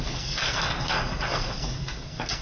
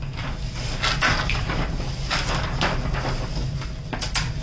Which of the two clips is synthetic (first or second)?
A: first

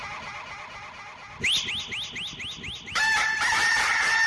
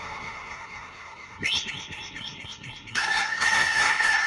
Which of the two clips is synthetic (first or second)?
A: second